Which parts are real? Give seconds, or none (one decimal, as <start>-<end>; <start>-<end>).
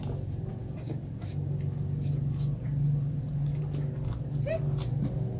0.0-5.4